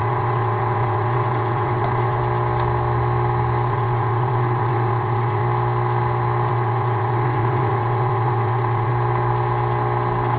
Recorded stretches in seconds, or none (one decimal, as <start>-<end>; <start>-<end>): 2.2-3.7; 5.4-6.5; 8.9-10.4

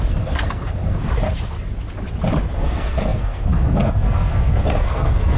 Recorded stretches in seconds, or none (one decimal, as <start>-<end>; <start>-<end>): 1.0-2.5

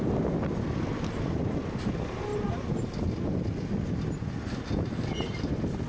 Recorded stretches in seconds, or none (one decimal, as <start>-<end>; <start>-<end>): 0.0-5.9

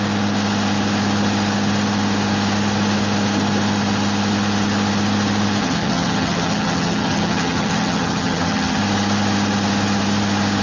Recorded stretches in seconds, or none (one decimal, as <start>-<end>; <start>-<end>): 0.0-5.6; 8.8-10.6

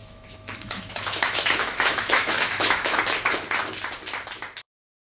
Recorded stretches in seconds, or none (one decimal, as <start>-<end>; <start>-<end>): 3.0-5.0

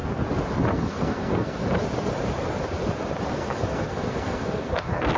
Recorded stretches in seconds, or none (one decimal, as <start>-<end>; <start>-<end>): 0.0-0.7; 1.6-3.3

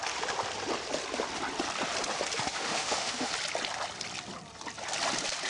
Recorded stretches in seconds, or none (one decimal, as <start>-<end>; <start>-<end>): 0.0-2.5; 3.3-5.5